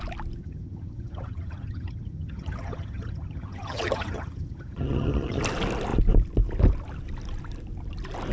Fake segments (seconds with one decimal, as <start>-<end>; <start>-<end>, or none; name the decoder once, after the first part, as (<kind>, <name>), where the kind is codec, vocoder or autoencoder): 0.4-5.4 (vocoder, HiFi-GAN)